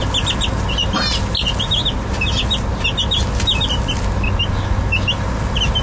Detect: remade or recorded recorded